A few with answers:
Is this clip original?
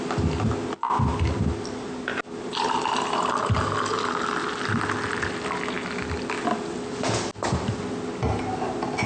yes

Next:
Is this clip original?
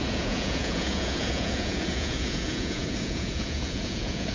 no